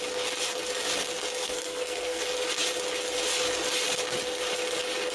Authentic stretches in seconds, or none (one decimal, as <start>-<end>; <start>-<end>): 0.0-1.4; 2.2-5.1